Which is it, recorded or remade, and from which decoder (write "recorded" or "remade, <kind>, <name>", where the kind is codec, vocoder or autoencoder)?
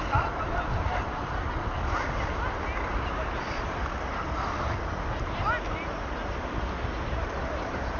recorded